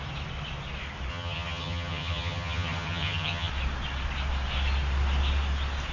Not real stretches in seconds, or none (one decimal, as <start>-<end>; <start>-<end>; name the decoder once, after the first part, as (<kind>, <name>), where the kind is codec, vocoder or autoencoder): 1.1-3.5 (vocoder, HiFi-GAN)